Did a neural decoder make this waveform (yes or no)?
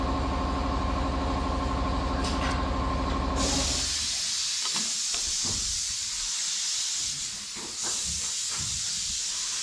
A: no